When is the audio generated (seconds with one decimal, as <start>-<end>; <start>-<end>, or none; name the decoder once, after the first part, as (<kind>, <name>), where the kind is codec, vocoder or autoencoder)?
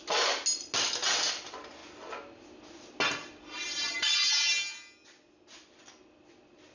none